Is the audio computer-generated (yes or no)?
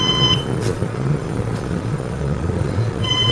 yes